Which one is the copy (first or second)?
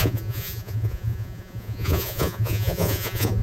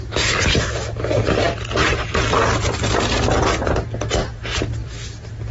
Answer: first